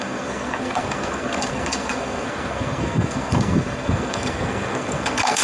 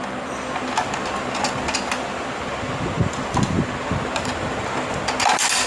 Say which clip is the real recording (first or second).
second